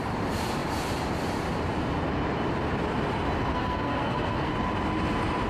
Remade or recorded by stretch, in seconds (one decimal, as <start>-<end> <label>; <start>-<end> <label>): 0.0-3.5 recorded; 3.5-4.5 remade; 4.5-5.5 recorded